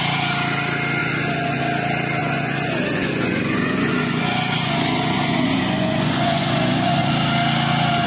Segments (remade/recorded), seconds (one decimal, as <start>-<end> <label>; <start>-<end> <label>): 0.0-1.0 recorded; 1.0-1.6 remade; 1.6-2.2 recorded; 2.2-7.1 remade; 7.1-8.1 recorded